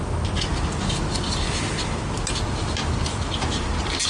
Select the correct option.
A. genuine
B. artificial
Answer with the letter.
A